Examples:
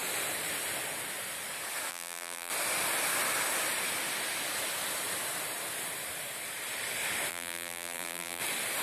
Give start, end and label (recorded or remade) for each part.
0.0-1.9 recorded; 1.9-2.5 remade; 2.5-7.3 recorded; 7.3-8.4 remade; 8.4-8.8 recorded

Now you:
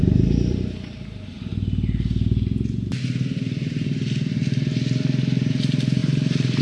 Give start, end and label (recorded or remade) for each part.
0.0-1.5 remade; 1.5-5.5 recorded; 5.5-6.6 remade

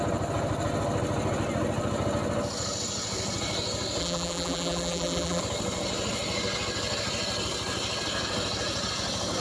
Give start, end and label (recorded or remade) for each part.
0.0-4.0 recorded; 4.0-5.4 remade; 5.4-9.4 recorded

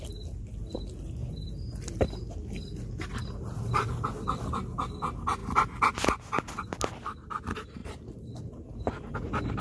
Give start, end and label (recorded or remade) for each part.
0.0-9.6 recorded

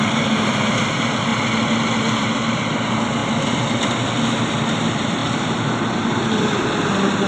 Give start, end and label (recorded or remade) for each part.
0.0-1.3 remade; 1.3-2.0 recorded; 2.0-3.2 remade; 3.2-4.7 recorded; 4.7-7.3 remade